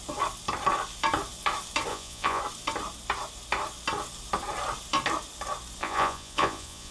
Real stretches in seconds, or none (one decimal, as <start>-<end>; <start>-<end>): 0.0-1.9; 2.4-5.8